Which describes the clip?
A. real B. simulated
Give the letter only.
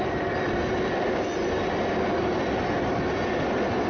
A